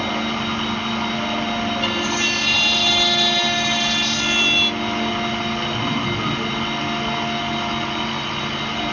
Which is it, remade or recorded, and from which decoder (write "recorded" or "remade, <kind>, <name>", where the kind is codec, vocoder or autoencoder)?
recorded